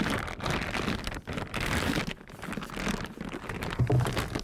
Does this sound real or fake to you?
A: real